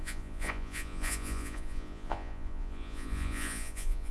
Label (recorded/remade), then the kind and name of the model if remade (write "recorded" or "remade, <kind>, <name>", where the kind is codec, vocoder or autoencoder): remade, vocoder, Vocos